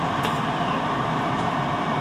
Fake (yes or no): yes